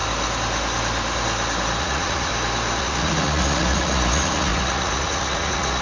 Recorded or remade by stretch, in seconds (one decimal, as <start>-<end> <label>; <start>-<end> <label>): 0.0-1.8 recorded; 1.8-2.3 remade; 2.3-2.8 recorded; 2.8-5.8 remade